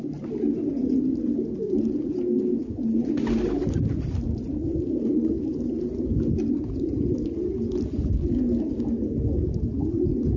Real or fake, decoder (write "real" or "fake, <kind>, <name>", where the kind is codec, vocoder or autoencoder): real